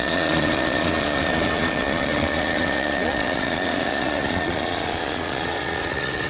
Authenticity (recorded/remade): remade